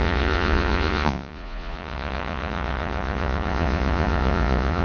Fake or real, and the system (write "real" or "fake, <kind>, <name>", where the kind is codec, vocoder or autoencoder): fake, vocoder, Vocos